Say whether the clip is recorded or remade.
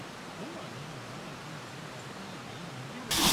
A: recorded